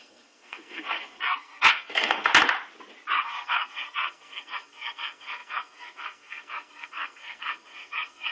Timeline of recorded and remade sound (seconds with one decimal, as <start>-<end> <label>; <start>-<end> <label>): 0.0-2.3 remade; 2.3-3.2 recorded; 3.2-8.3 remade